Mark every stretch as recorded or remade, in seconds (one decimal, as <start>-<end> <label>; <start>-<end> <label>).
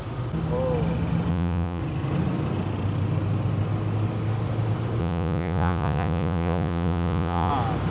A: 0.0-1.3 recorded; 1.3-1.8 remade; 1.8-5.0 recorded; 5.0-7.5 remade; 7.5-7.9 recorded